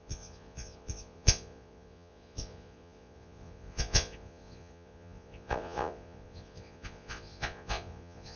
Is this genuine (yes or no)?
no